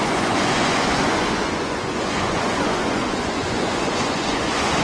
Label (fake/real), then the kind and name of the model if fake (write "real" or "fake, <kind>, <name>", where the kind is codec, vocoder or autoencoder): fake, vocoder, Vocos